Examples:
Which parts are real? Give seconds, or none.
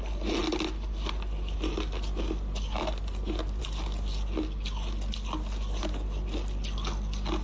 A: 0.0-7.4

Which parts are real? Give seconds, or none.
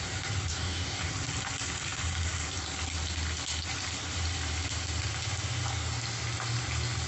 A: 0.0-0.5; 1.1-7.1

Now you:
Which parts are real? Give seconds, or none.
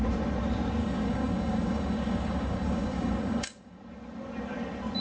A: 0.0-0.8; 3.8-5.0